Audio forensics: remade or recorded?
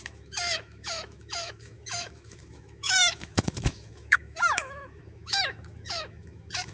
remade